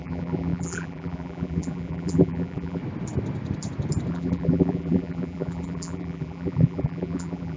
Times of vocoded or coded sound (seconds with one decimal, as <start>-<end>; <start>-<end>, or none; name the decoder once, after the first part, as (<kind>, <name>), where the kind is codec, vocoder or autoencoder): 0.0-2.8 (vocoder, BigVGAN v2); 4.1-7.6

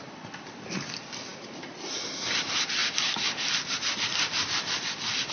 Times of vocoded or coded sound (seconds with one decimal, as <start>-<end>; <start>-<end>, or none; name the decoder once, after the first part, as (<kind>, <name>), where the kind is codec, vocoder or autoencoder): 0.0-2.8 (vocoder, BigVGAN v2); 4.0-5.3

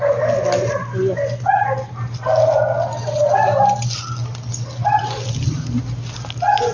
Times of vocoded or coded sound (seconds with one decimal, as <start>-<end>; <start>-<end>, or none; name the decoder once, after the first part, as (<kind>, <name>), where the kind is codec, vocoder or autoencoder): none

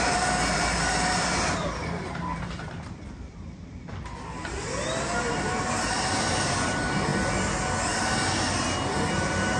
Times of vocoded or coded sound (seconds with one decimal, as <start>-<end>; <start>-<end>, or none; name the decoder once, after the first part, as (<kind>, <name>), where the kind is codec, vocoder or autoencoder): 0.0-7.1 (vocoder, BigVGAN v2)

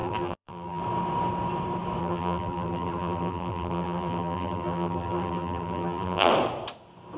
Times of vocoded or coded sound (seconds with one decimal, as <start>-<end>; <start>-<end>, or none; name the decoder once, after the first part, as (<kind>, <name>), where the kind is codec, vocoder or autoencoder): 0.0-0.8 (vocoder, BigVGAN v2); 2.0-6.3